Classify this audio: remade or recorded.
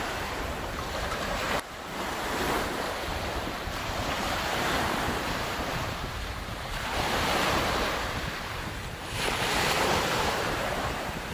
remade